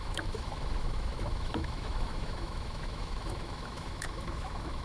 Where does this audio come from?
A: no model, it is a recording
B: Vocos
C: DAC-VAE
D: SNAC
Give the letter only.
C